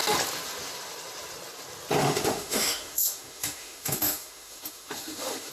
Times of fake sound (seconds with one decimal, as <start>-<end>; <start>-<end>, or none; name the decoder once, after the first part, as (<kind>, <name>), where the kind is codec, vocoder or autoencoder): 2.0-5.5 (autoencoder, DAC-VAE)